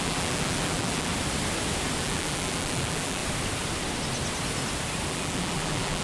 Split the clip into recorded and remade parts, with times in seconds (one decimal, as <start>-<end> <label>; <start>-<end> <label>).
0.0-1.1 remade; 1.1-2.0 recorded; 2.0-3.2 remade; 3.2-5.1 recorded; 5.1-6.0 remade